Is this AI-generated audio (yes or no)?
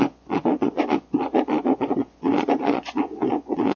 yes